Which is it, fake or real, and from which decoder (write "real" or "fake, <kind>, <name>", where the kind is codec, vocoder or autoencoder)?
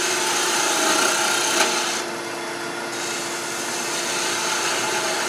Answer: real